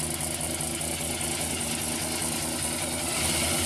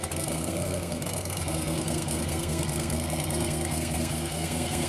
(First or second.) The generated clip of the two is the second